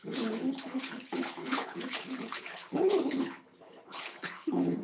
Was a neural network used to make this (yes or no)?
yes